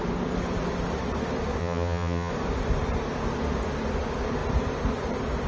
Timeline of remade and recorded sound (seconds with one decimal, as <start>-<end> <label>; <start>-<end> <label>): 0.0-1.6 recorded; 1.6-2.3 remade; 2.3-5.5 recorded